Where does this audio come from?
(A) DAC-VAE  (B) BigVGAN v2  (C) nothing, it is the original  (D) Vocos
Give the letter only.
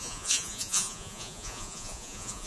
D